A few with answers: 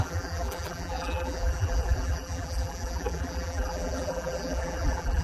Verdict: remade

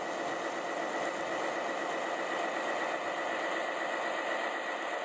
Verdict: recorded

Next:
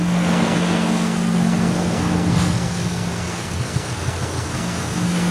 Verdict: remade